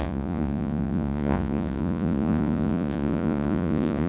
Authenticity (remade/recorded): remade